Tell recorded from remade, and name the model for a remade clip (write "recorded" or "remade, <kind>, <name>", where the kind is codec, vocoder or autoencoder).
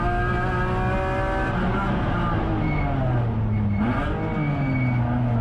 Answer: recorded